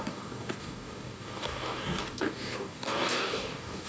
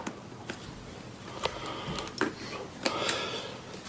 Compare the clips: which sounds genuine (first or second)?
second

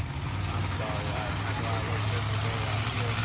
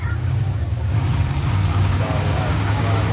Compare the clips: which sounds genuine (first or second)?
first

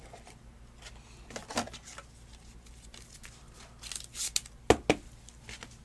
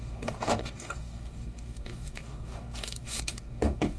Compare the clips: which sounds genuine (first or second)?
first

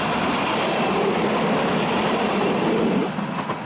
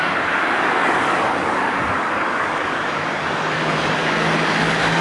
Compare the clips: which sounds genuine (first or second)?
first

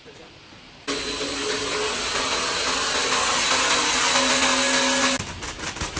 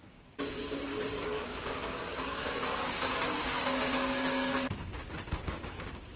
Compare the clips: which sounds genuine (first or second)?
first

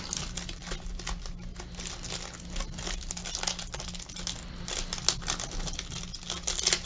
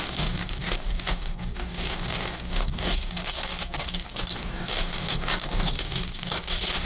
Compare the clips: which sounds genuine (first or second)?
first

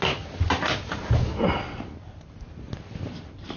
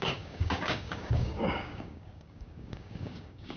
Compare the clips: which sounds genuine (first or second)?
first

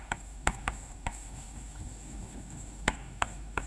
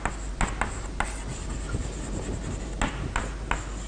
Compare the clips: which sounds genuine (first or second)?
second